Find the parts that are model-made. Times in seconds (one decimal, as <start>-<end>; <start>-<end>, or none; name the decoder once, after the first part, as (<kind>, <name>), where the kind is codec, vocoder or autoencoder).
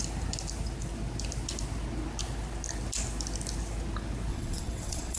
4.3-5.2 (vocoder, WaveNeXt)